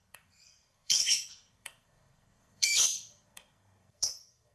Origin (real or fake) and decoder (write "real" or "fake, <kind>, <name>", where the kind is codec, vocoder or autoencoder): fake, codec, SNAC